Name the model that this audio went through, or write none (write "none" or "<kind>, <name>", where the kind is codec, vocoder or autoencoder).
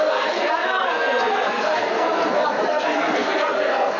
codec, SNAC